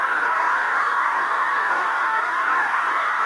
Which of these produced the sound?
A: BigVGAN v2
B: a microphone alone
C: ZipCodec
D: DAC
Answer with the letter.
D